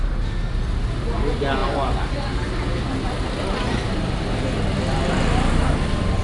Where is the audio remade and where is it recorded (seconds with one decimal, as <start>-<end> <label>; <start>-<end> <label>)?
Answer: 0.0-6.2 recorded